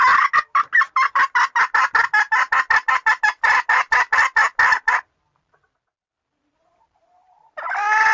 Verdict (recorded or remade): recorded